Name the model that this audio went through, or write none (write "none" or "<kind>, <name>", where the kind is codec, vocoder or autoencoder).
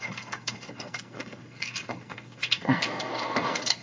codec, SNAC